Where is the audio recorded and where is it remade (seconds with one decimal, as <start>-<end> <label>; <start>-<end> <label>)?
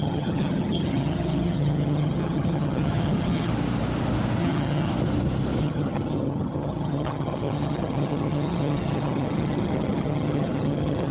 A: 0.0-3.5 remade; 3.5-4.4 recorded; 4.4-4.9 remade; 4.9-5.6 recorded; 5.6-11.1 remade